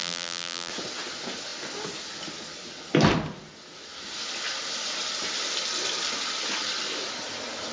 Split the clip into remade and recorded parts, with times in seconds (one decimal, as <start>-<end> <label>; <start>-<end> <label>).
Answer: 0.0-0.7 remade; 0.7-7.7 recorded